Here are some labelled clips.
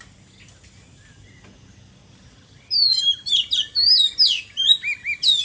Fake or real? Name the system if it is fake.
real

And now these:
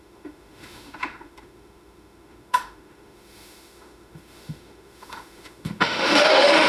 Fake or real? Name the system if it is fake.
fake, autoencoder, DAC-VAE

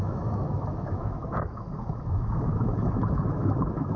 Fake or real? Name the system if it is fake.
fake, autoencoder, DAC-VAE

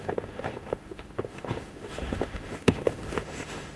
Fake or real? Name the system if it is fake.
fake, autoencoder, DAC-VAE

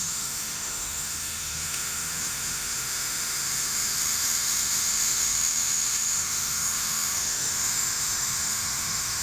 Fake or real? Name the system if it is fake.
fake, autoencoder, DAC-VAE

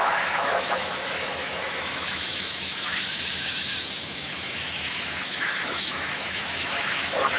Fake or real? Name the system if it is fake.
fake, autoencoder, DAC-VAE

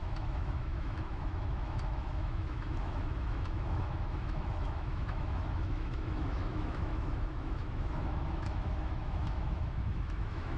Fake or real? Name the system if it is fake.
fake, autoencoder, DAC-VAE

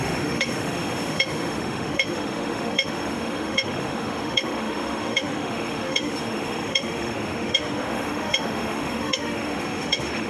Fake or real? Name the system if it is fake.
fake, autoencoder, DAC-VAE